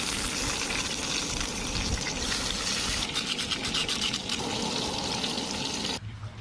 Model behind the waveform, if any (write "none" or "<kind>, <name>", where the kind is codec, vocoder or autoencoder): none